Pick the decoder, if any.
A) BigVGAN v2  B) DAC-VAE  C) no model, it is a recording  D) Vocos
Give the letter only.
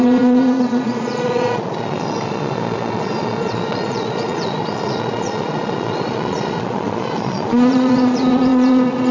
D